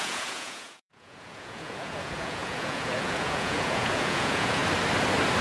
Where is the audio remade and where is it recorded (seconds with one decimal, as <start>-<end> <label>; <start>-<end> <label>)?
0.0-4.6 remade; 4.6-5.4 recorded